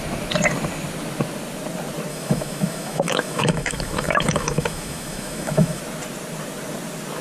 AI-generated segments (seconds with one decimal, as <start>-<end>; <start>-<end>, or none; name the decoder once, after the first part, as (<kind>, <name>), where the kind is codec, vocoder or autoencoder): 2.1-5.8 (autoencoder, DAC-VAE)